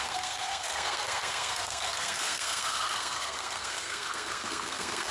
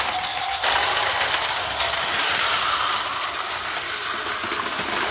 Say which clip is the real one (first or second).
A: second